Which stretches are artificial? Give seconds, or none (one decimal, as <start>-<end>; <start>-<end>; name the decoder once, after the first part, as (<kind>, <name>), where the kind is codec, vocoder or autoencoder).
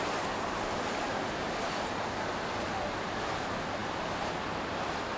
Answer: none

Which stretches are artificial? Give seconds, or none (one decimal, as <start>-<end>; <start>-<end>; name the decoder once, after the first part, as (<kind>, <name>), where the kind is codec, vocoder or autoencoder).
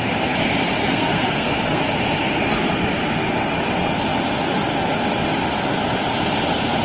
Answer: 0.8-1.8 (codec, SNAC)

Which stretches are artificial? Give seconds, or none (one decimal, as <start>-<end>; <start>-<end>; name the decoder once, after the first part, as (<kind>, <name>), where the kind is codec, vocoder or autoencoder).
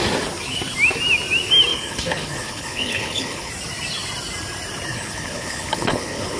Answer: 1.7-3.5 (codec, HILCodec); 4.9-6.4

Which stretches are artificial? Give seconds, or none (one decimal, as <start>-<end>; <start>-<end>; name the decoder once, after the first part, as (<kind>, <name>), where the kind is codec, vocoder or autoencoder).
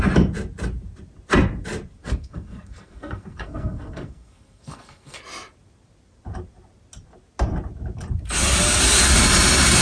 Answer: 2.0-5.2 (codec, SNAC)